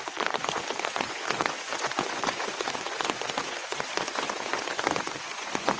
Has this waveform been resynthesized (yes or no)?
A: yes